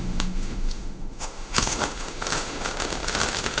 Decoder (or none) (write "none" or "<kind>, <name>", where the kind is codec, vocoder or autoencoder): autoencoder, DAC-VAE